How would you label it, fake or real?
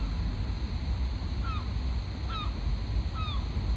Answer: real